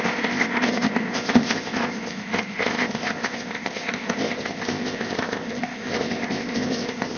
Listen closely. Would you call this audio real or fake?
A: fake